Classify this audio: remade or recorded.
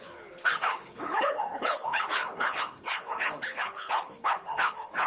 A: remade